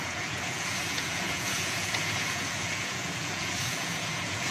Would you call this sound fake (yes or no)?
yes